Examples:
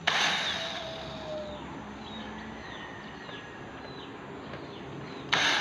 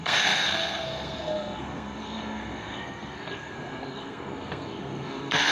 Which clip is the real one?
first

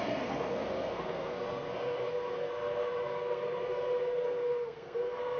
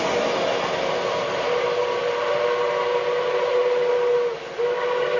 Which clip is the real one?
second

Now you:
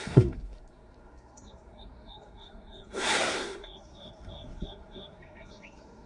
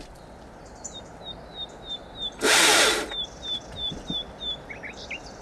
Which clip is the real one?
second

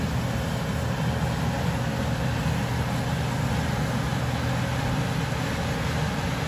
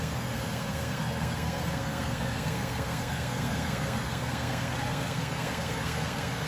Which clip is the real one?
first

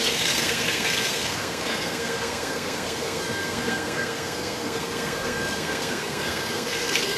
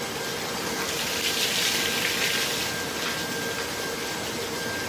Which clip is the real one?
second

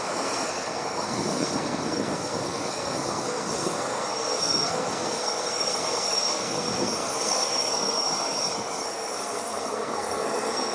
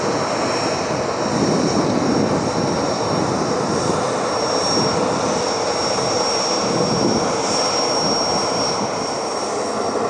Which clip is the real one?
second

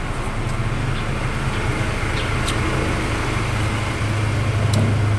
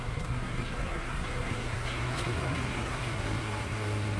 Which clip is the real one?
first